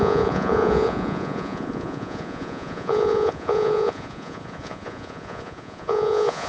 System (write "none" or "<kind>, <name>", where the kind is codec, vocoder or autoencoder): vocoder, Vocos